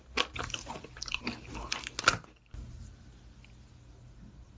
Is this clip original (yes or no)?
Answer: yes